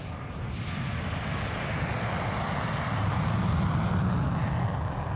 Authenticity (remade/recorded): recorded